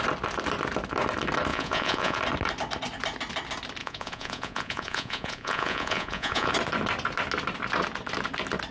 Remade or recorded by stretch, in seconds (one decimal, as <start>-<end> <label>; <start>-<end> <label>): 0.0-1.5 recorded; 1.5-2.2 remade; 2.2-3.8 recorded; 3.8-6.5 remade; 6.5-8.7 recorded